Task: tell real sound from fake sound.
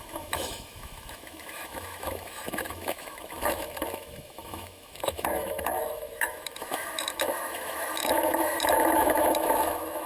fake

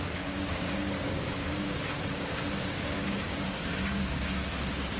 fake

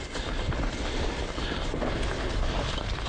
real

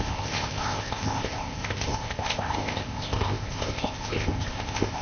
fake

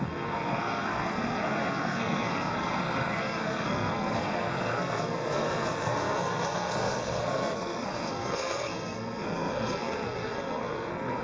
fake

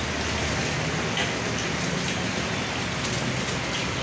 real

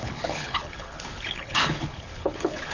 fake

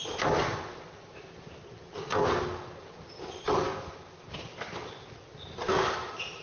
real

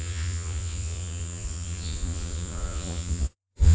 fake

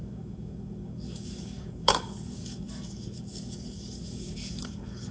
fake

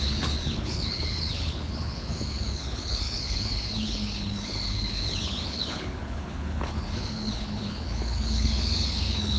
fake